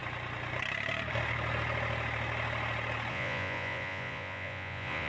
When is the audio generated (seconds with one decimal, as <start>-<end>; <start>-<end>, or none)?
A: 3.1-5.1